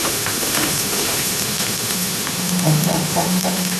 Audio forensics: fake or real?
fake